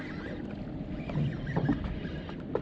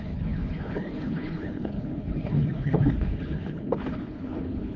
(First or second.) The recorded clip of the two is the first